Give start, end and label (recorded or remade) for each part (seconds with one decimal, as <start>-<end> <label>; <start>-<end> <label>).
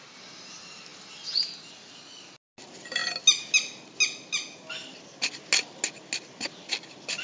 0.0-7.2 recorded